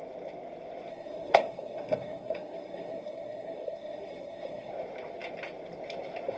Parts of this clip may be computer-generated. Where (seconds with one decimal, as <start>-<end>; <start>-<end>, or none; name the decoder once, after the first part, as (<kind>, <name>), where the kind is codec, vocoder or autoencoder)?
0.9-4.7 (codec, SNAC)